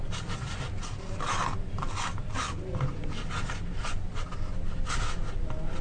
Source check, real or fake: real